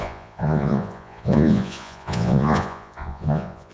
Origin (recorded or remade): remade